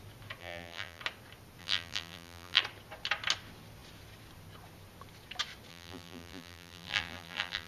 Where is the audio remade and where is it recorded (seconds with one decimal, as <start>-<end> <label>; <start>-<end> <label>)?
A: 0.0-0.4 recorded; 0.4-1.0 remade; 1.0-1.6 recorded; 1.6-2.6 remade; 2.6-5.7 recorded; 5.7-7.7 remade